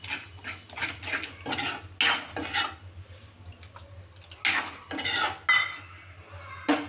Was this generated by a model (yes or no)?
no